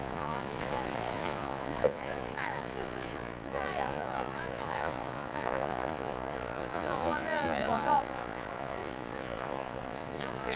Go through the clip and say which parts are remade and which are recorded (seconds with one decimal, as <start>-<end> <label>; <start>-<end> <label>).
0.0-10.6 remade